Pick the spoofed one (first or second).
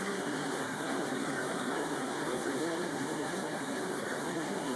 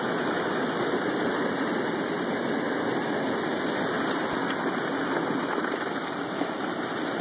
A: first